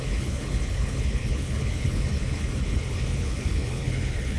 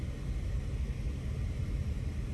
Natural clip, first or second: second